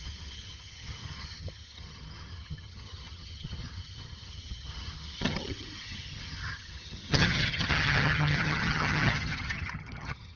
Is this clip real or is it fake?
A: fake